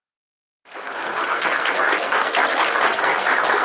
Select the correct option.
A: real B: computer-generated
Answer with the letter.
B